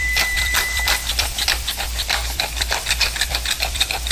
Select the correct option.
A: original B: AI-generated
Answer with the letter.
B